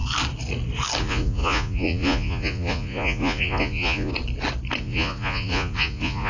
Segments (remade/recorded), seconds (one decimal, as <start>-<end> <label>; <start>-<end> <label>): 0.0-1.0 recorded; 1.0-4.1 remade; 4.1-4.8 recorded; 4.8-6.3 remade